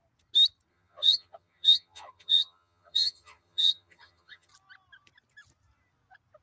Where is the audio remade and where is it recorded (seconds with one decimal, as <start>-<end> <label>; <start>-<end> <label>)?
0.0-0.7 recorded; 0.7-4.5 remade; 4.5-6.4 recorded

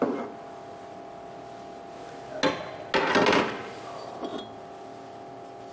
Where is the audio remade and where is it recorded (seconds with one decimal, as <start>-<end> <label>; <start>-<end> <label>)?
0.0-5.7 recorded